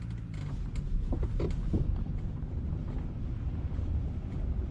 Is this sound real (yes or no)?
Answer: yes